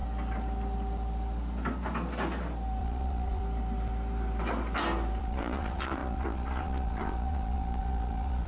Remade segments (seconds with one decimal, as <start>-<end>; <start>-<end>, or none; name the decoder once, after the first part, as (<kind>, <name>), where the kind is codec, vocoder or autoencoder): 2.8-3.4 (vocoder, Vocos); 5.2-8.5